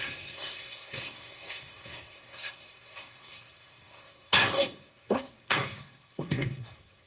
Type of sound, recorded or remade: remade